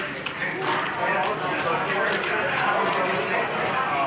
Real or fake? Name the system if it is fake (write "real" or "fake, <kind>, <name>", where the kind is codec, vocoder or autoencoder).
real